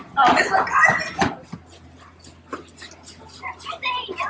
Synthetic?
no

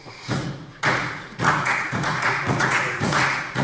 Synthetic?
yes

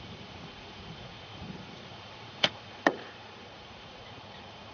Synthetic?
yes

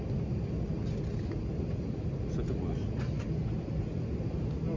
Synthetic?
no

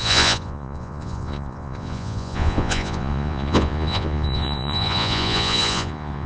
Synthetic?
yes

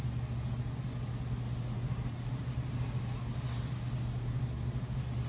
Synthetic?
no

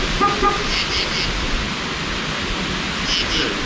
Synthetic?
no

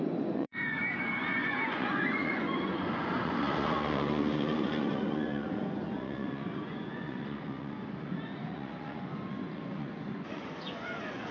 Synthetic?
yes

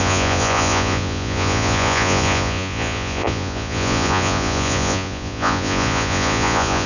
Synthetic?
yes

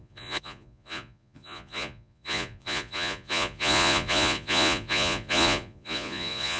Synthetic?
yes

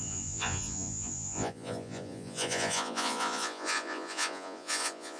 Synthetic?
yes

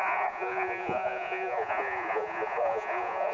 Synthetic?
yes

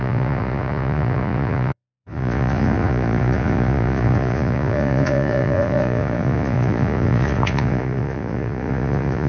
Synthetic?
yes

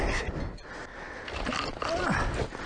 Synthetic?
no